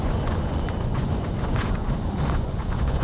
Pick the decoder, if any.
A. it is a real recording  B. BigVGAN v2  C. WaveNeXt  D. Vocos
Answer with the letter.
D